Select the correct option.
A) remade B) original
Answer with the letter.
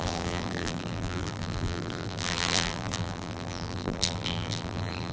A